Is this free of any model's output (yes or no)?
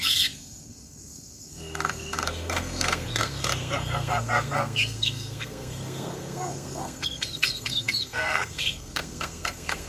no